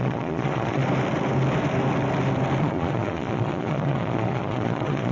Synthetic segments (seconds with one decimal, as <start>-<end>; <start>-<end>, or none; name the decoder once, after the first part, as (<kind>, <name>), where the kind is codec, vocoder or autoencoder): 0.0-0.8 (vocoder, Vocos); 2.6-5.1